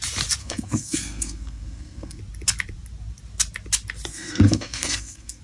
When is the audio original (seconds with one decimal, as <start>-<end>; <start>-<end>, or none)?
0.0-0.4; 2.2-4.1